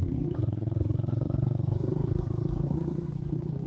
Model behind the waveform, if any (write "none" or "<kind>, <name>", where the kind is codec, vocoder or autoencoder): codec, SNAC